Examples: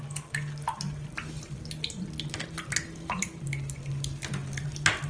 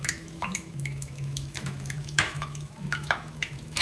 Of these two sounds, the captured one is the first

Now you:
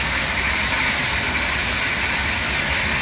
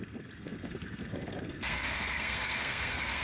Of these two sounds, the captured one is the first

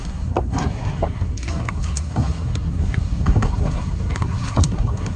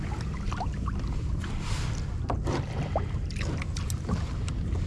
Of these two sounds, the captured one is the second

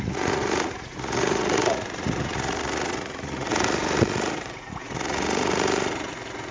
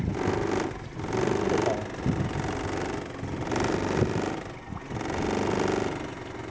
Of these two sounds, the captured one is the second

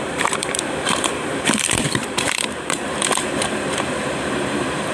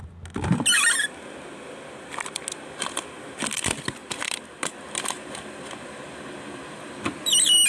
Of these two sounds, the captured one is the second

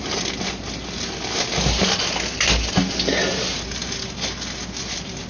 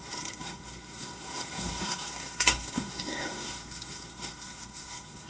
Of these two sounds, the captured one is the first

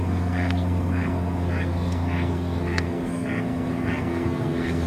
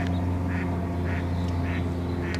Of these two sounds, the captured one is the second